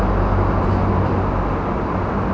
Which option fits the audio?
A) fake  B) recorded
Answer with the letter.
B